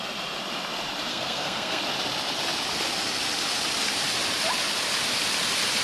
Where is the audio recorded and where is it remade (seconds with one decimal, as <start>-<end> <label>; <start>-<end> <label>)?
0.0-1.1 recorded; 1.1-1.8 remade; 1.8-5.8 recorded